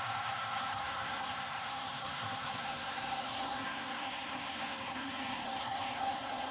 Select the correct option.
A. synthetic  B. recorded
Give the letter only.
A